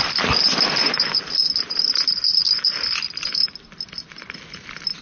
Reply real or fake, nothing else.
real